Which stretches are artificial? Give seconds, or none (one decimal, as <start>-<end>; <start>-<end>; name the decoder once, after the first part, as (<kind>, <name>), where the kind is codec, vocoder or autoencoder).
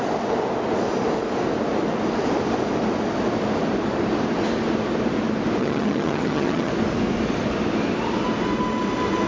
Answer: 5.6-6.7 (vocoder, HiFi-GAN)